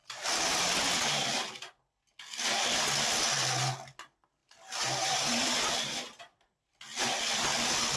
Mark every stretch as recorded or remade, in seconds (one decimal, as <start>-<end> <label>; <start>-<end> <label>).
0.0-0.6 remade; 0.6-4.4 recorded; 4.4-6.7 remade; 6.7-8.0 recorded